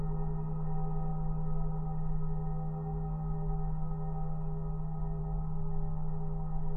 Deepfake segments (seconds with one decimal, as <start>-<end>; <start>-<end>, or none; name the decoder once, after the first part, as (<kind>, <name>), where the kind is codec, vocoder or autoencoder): none